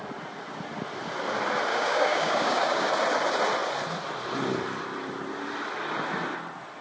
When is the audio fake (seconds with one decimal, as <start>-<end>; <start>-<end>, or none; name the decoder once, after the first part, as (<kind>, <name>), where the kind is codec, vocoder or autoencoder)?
1.7-2.9 (codec, DAC)